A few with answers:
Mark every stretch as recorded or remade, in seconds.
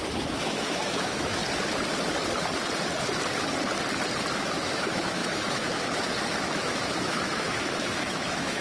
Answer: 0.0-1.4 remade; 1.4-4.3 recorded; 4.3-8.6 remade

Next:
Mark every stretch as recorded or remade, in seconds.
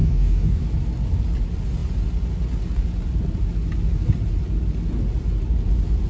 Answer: 0.0-0.6 remade; 0.6-6.1 recorded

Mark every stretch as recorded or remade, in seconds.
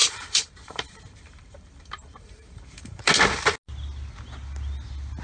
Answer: 0.0-3.1 remade; 3.1-5.2 recorded